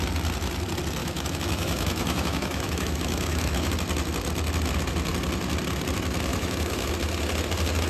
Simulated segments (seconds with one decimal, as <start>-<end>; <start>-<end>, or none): 1.0-3.7; 6.3-6.9